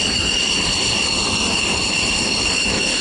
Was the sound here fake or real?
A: fake